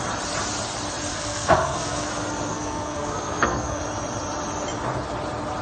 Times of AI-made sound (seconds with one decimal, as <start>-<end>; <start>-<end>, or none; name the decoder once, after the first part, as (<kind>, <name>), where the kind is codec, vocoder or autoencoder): 1.1-2.1 (codec, SNAC); 2.5-3.8